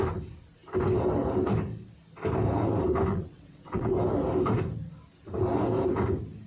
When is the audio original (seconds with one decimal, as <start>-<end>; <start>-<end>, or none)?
0.0-3.1; 3.9-6.5